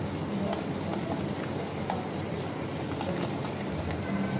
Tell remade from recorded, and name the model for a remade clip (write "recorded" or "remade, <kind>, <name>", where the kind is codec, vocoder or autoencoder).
recorded